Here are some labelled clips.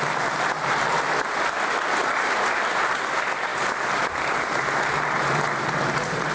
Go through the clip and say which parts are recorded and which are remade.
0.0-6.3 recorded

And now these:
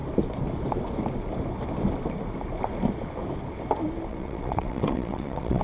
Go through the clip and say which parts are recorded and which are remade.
0.0-4.1 recorded; 4.1-5.6 remade

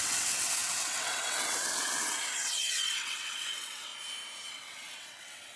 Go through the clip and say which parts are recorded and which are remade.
0.0-3.9 remade; 3.9-4.5 recorded; 4.5-5.6 remade

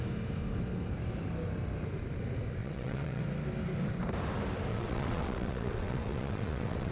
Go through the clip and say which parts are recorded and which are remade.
0.0-2.6 recorded; 2.6-3.2 remade; 3.2-4.7 recorded; 4.7-6.9 remade

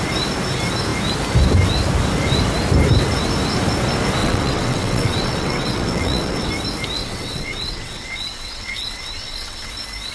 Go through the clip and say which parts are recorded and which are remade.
0.0-4.2 recorded; 4.2-6.5 remade; 6.5-7.0 recorded; 7.0-9.7 remade; 9.7-10.1 recorded

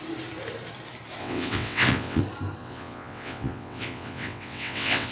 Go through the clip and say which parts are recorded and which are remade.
0.0-1.2 recorded; 1.2-2.2 remade; 2.2-2.6 recorded; 2.6-5.1 remade

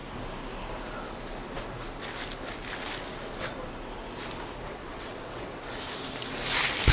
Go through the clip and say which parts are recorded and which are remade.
0.0-4.7 recorded; 4.7-5.6 remade; 5.6-6.9 recorded

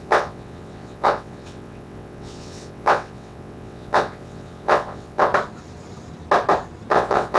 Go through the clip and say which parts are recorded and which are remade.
0.0-5.3 remade; 5.3-6.9 recorded; 6.9-7.4 remade